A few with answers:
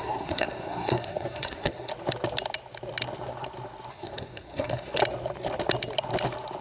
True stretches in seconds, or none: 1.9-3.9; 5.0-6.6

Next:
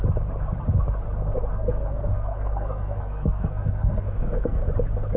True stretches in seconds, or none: 0.0-1.5; 4.6-5.2